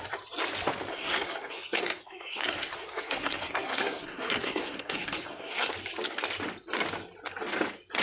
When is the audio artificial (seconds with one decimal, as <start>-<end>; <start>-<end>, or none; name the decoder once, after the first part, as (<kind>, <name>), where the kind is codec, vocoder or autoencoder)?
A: 0.9-5.7 (codec, SNAC)